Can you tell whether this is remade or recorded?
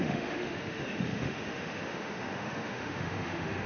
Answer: remade